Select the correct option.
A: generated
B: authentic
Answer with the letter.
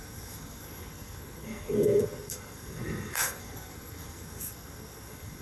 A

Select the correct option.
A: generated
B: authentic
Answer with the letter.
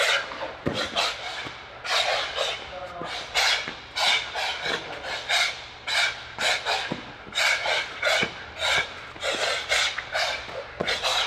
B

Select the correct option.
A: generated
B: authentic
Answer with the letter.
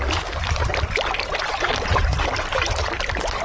B